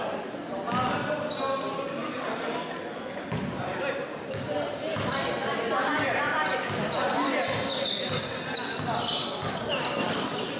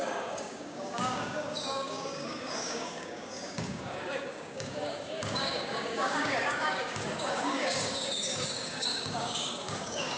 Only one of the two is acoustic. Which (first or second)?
first